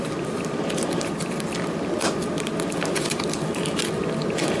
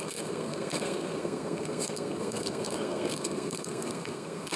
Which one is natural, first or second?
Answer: first